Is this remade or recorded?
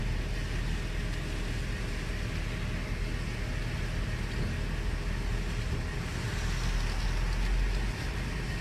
recorded